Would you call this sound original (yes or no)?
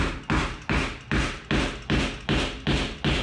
yes